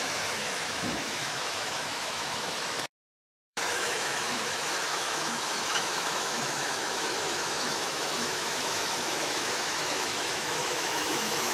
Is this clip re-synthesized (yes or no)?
yes